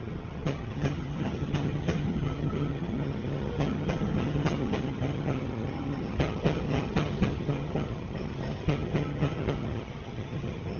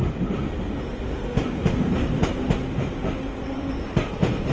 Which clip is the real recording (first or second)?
second